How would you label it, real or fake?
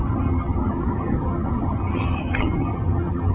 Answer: fake